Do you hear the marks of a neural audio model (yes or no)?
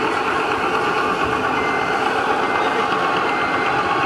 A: no